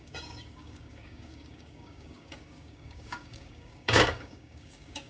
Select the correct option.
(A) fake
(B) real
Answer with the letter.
A